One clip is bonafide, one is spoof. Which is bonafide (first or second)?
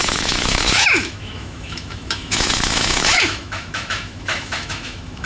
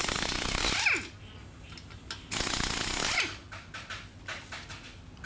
second